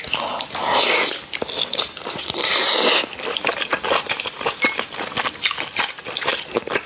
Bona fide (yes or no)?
yes